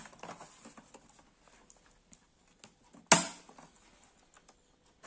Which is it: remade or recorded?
recorded